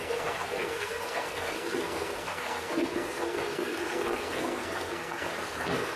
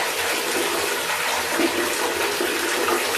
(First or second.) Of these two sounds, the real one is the second